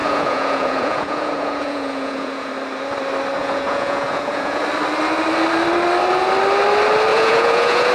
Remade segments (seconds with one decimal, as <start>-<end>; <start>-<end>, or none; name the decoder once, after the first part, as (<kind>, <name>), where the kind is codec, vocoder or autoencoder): 0.0-2.5 (vocoder, Vocos); 3.4-4.6; 7.1-7.9

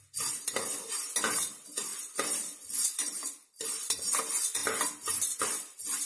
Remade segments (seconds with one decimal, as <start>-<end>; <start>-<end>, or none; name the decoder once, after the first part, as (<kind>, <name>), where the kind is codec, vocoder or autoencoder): none

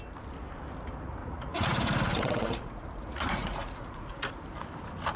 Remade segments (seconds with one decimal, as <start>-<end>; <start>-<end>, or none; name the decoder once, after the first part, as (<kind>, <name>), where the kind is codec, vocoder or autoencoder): 1.2-4.3 (vocoder, Vocos)

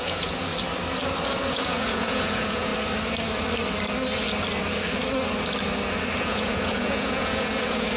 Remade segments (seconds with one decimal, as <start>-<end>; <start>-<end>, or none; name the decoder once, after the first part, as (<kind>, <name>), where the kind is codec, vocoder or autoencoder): 0.0-0.5 (vocoder, Vocos); 1.5-2.7; 6.2-8.0

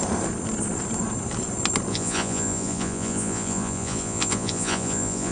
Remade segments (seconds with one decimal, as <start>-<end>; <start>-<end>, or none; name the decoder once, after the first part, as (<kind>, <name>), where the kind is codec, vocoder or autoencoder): 1.9-5.3 (vocoder, Vocos)

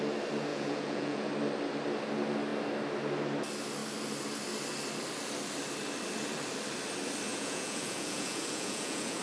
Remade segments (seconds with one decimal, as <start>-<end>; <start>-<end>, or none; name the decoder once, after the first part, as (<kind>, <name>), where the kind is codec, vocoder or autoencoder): 0.5-1.3 (vocoder, Vocos); 7.3-9.2